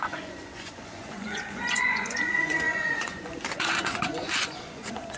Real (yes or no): no